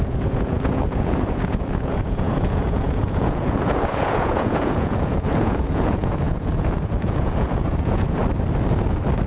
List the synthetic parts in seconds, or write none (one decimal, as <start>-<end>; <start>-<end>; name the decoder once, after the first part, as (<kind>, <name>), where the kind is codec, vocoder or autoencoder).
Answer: 0.0-8.2 (vocoder, Vocos)